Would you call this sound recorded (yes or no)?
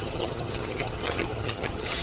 no